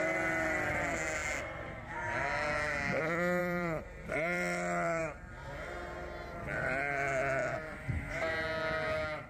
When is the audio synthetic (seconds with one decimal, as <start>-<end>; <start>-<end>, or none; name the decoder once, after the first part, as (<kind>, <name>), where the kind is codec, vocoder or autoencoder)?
3.4-5.0 (vocoder, BigVGAN v2); 7.4-8.3

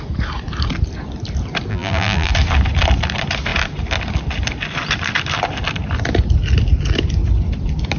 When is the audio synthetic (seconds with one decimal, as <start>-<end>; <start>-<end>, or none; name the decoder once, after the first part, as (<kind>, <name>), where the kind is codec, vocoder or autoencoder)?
1.7-2.3 (vocoder, BigVGAN v2)